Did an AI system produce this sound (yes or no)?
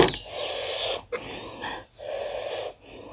no